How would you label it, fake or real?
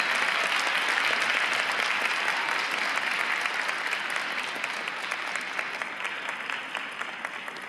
real